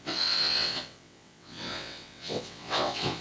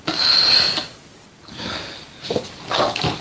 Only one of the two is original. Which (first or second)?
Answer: second